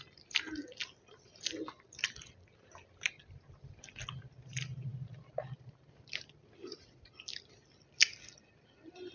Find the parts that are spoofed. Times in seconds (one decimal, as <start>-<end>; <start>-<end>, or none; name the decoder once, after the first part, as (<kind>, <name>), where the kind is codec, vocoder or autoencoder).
4.9-8.4 (vocoder, BigVGAN v2)